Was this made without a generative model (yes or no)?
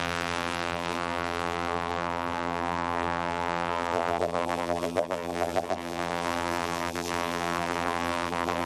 no